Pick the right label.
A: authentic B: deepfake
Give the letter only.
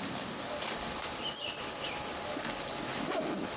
B